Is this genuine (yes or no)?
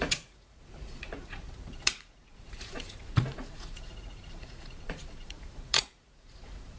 no